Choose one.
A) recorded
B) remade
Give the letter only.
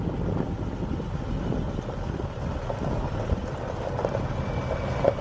A